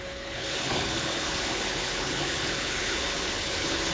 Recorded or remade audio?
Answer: remade